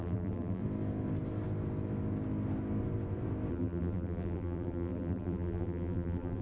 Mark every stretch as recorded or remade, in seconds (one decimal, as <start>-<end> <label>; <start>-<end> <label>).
0.0-0.6 remade; 0.6-3.5 recorded; 3.5-6.4 remade